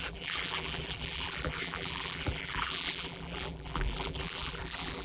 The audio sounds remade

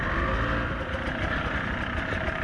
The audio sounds remade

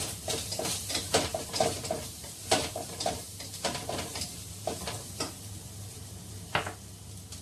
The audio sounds remade